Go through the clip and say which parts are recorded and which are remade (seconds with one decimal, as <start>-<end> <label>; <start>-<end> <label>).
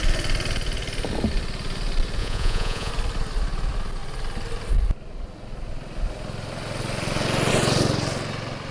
0.0-2.2 recorded; 2.2-2.9 remade; 2.9-8.7 recorded